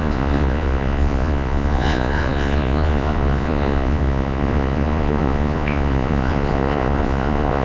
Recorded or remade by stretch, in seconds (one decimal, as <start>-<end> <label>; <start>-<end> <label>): 0.0-7.6 remade